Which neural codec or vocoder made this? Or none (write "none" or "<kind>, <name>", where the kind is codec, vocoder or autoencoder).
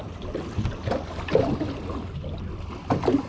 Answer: none